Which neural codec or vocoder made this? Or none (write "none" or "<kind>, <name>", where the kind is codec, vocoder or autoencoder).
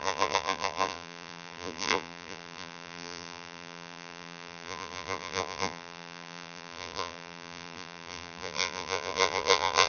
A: vocoder, BigVGAN v2